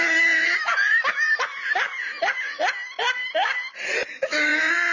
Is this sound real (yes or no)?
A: yes